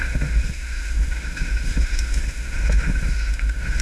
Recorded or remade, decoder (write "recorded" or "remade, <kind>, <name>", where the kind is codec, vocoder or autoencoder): remade, autoencoder, DAC-VAE